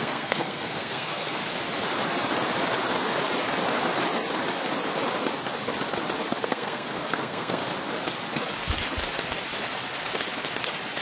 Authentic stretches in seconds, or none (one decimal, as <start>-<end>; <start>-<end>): 1.4-6.4; 7.6-11.0